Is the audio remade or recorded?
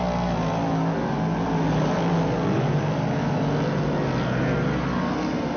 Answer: recorded